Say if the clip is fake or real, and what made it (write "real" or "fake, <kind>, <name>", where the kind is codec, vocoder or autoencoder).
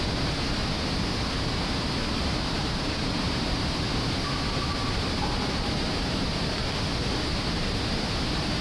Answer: real